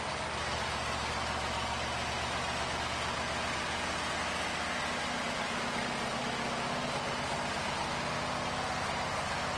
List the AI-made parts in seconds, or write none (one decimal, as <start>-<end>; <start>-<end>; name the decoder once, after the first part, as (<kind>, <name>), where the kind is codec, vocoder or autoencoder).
none